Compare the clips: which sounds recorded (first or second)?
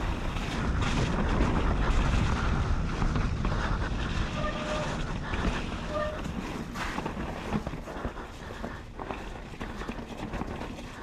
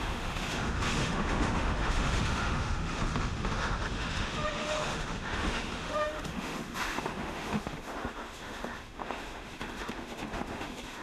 first